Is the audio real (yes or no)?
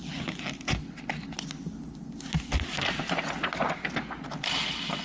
yes